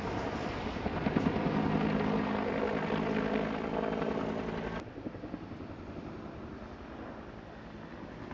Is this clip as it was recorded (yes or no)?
yes